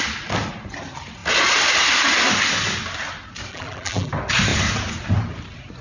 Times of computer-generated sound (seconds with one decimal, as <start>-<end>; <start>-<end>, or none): 3.5-4.1